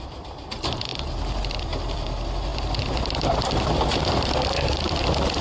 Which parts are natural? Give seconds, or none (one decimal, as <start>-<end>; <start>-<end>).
0.9-1.4